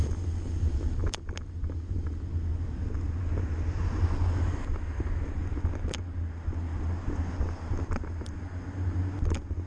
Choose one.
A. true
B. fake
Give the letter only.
A